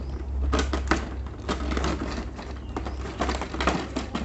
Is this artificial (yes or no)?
no